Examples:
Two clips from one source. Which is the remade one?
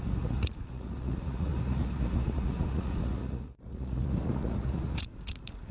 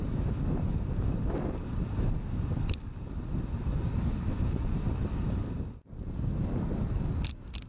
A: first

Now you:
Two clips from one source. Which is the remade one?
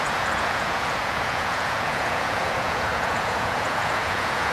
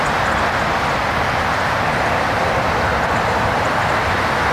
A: first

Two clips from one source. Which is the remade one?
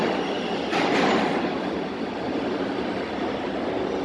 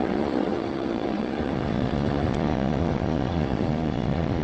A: second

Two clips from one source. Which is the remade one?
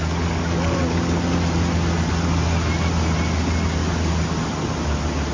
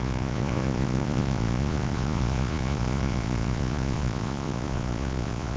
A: second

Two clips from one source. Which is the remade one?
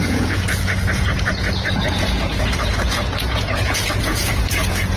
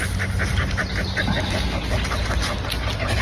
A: first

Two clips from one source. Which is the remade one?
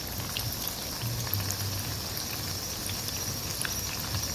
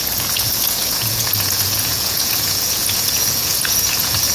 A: second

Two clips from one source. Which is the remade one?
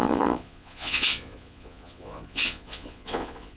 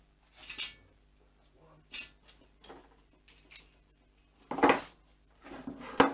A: first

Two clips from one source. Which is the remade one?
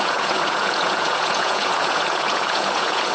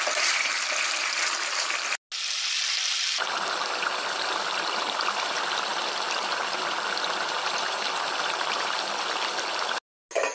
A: first